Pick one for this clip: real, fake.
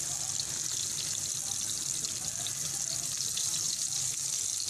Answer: real